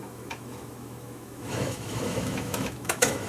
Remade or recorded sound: remade